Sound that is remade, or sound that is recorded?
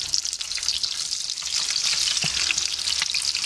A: recorded